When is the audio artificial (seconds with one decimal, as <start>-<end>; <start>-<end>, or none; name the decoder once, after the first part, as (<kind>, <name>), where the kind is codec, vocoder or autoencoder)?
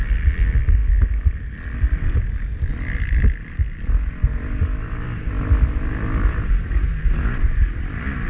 none